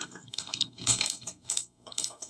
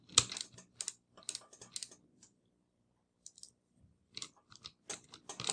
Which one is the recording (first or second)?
second